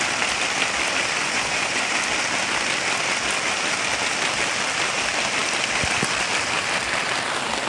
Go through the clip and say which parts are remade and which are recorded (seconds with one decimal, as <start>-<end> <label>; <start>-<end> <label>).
0.0-1.2 recorded; 1.2-1.9 remade; 1.9-7.7 recorded